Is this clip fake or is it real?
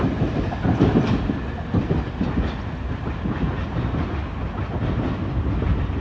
real